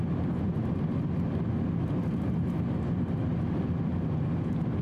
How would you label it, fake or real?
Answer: real